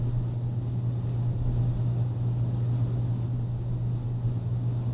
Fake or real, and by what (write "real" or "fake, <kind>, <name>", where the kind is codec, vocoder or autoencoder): real